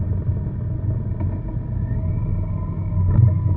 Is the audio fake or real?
real